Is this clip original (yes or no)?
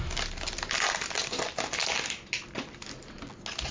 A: yes